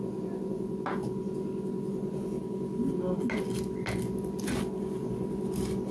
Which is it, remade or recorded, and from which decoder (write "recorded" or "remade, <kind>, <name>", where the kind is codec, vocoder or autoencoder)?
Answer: recorded